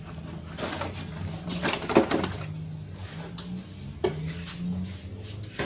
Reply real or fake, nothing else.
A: real